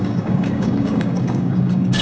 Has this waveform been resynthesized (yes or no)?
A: yes